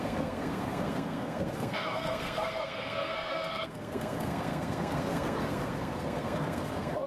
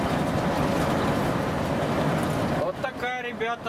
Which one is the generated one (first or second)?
first